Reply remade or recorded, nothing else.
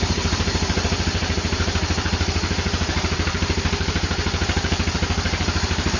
remade